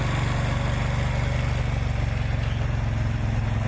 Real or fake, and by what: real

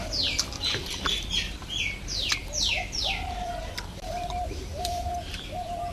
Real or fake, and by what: fake, vocoder, BigVGAN v2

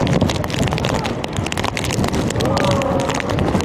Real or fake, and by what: real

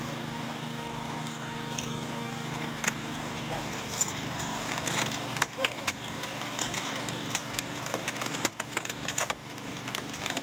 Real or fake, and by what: fake, codec, DAC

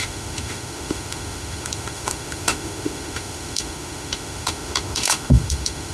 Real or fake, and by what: fake, autoencoder, DAC-VAE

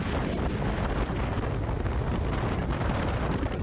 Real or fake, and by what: real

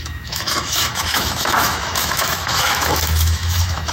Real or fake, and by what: fake, autoencoder, DAC-VAE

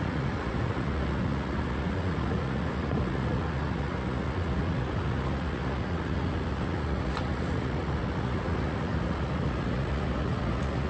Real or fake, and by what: fake, vocoder, Vocos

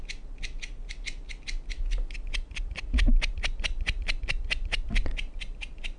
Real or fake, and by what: real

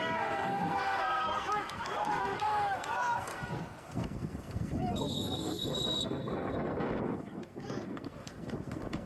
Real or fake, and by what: fake, codec, SNAC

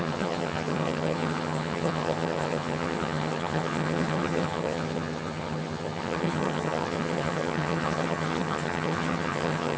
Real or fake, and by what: fake, vocoder, HiFi-GAN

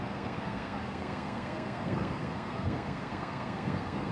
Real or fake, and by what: fake, codec, SNAC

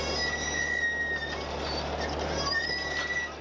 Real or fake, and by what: real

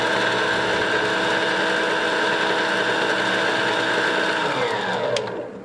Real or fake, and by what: real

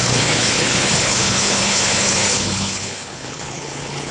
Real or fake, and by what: fake, codec, HILCodec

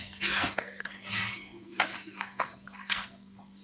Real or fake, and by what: fake, codec, SNAC